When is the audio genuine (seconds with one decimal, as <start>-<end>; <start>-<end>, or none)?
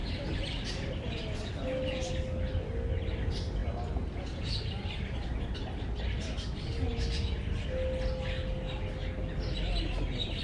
0.0-10.4